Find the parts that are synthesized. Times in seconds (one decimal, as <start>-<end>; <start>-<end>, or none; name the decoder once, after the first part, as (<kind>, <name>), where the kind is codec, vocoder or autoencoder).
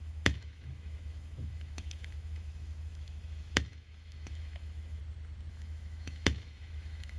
0.0-5.0 (autoencoder, DAC-VAE); 5.5-7.2